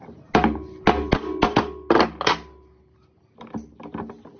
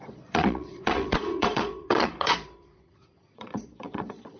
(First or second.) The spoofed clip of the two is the second